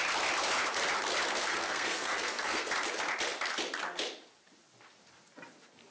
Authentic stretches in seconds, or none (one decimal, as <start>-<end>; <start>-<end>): 0.0-1.4; 2.7-5.9